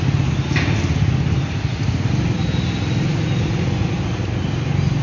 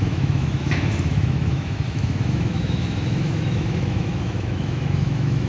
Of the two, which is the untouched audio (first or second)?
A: first